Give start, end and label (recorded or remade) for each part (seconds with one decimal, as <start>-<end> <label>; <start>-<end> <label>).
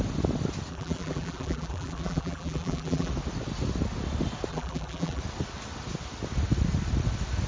0.0-0.7 recorded; 0.7-3.1 remade; 3.1-4.5 recorded; 4.5-5.2 remade; 5.2-7.5 recorded